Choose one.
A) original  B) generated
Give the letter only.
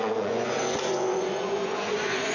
B